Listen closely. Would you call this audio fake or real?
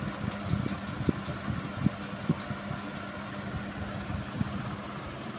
real